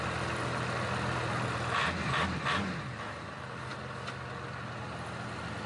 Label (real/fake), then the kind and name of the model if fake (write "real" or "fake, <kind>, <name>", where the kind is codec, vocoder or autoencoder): real